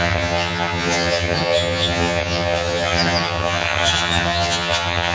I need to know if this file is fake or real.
fake